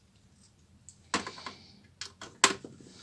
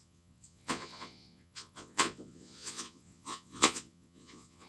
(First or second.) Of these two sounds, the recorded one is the first